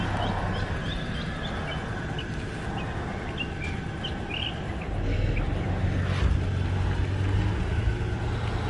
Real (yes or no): yes